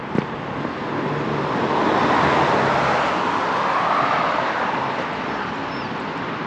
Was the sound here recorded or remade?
recorded